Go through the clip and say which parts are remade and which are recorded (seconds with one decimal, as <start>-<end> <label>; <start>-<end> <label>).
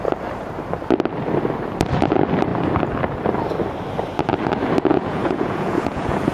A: 0.0-4.9 recorded; 4.9-6.3 remade